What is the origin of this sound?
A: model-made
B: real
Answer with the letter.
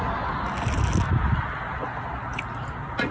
B